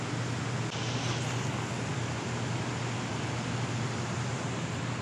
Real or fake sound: real